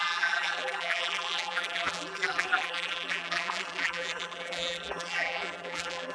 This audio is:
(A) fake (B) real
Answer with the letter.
A